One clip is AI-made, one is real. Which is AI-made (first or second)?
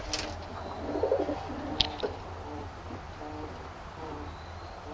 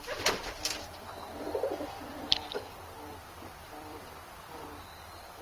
second